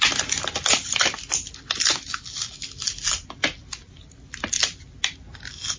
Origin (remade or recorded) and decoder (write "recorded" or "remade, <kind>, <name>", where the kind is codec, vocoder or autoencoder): recorded